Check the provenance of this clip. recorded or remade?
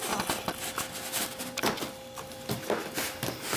recorded